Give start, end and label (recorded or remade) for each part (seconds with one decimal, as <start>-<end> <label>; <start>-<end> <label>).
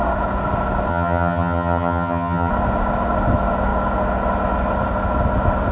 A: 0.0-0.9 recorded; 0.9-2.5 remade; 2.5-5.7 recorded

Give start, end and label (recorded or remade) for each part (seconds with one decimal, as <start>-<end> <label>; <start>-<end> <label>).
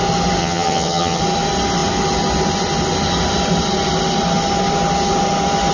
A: 0.0-0.4 recorded; 0.4-1.2 remade; 1.2-5.7 recorded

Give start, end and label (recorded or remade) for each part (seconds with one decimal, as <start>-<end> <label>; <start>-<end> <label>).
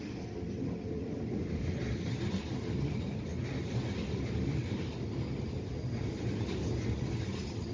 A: 0.0-7.7 recorded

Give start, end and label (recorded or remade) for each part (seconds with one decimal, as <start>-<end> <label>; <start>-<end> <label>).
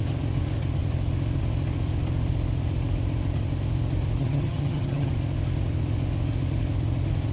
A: 0.0-4.2 recorded; 4.2-5.1 remade; 5.1-7.3 recorded